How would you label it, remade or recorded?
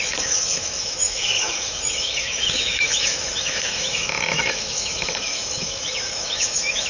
remade